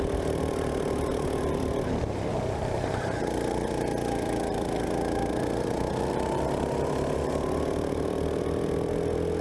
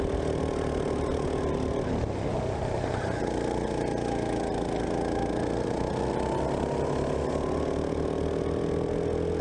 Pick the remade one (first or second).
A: first